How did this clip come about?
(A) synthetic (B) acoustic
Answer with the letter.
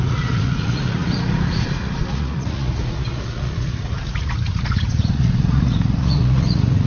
A